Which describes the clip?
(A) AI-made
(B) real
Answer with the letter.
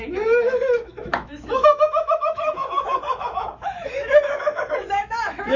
A